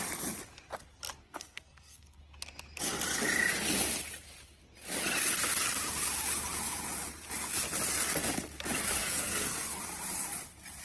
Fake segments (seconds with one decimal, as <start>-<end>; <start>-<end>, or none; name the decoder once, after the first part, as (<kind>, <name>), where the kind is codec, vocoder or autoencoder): 1.2-2.2 (codec, SNAC); 9.0-9.8